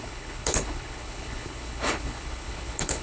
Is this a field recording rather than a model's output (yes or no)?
no